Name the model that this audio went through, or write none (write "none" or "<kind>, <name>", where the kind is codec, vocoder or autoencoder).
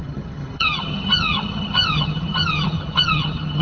vocoder, HiFi-GAN